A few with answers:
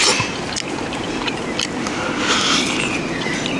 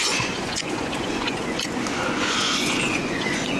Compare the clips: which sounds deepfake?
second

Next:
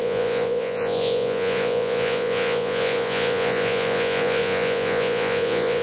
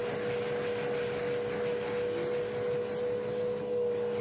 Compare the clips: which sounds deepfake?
first